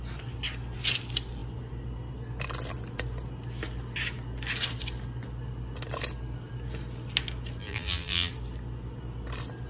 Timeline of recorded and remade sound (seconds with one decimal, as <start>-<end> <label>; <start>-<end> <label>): 0.0-7.6 recorded; 7.6-8.3 remade; 8.3-9.7 recorded